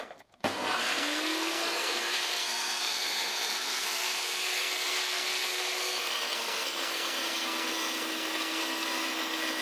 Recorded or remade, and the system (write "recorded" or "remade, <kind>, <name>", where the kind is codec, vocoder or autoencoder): remade, codec, SNAC